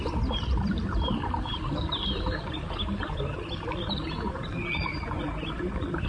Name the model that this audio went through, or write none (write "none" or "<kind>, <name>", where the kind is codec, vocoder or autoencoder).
none